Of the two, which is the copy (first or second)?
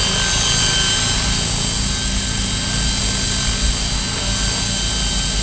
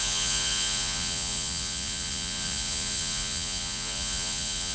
second